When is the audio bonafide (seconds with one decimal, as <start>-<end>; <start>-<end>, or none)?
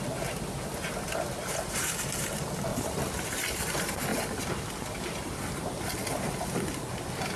0.0-7.4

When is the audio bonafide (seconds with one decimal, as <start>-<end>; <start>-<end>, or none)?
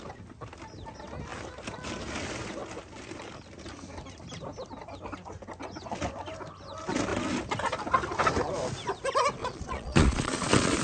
0.0-9.4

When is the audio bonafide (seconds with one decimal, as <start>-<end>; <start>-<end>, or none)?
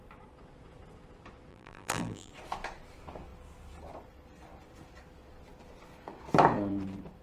0.0-1.5; 2.3-7.2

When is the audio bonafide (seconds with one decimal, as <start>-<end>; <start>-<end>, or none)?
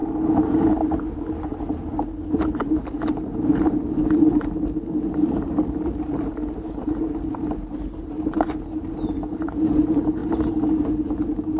0.0-2.4; 10.2-10.9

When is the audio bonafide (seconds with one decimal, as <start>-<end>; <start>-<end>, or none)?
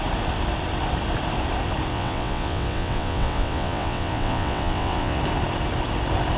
0.0-1.9; 5.2-6.4